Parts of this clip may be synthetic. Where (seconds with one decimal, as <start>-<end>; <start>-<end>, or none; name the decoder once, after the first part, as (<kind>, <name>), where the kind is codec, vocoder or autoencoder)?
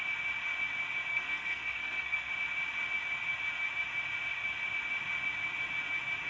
1.1-2.3 (codec, SNAC)